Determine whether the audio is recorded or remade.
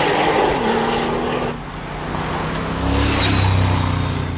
recorded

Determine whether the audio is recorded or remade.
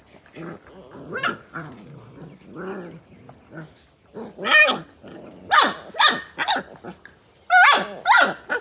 recorded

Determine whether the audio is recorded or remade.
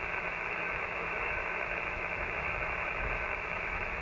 remade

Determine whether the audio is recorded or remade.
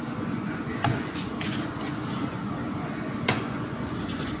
remade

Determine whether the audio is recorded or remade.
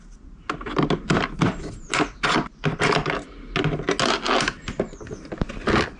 recorded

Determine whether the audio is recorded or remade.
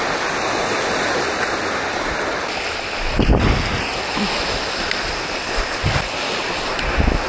recorded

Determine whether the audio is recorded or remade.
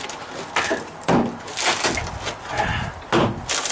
recorded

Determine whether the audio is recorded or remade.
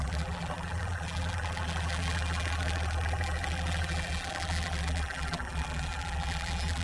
remade